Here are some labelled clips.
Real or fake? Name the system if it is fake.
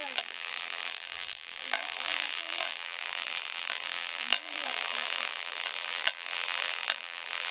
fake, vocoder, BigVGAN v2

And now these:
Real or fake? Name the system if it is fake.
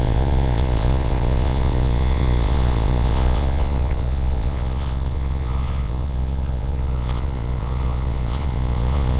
fake, vocoder, Vocos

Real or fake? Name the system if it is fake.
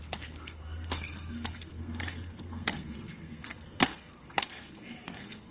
fake, codec, SNAC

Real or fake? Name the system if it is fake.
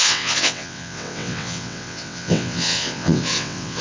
fake, vocoder, WaveNeXt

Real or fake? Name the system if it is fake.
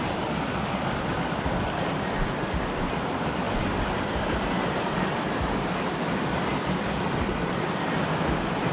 real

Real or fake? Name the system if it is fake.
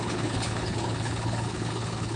fake, codec, HILCodec